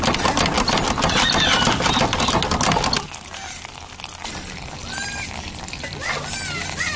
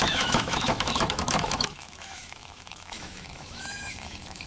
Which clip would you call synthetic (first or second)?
second